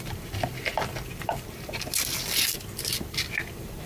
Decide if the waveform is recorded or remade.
remade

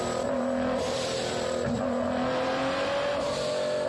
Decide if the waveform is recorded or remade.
recorded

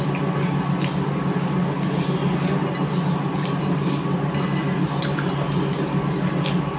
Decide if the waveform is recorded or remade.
recorded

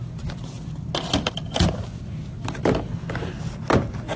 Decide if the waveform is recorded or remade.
recorded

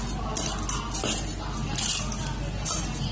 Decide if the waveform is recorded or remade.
recorded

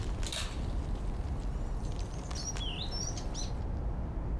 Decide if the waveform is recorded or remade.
recorded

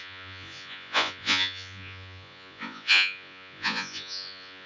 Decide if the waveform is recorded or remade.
remade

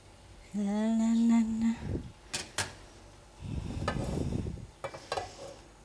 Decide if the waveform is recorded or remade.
recorded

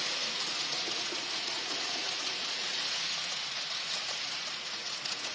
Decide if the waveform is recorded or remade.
remade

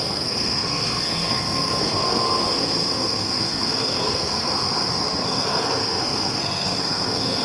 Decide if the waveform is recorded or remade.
remade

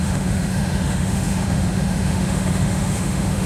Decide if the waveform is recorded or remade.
remade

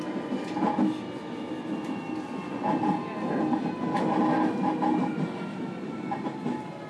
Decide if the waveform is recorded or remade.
recorded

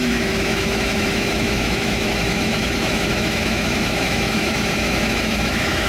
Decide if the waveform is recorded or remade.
remade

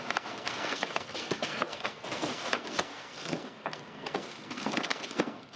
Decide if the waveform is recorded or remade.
remade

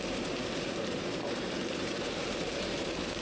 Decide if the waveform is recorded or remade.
remade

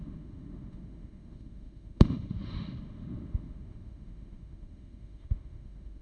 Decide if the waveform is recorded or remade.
remade